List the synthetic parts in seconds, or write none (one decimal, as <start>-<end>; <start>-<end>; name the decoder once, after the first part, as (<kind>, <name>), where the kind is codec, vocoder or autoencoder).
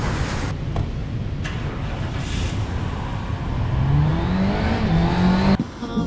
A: none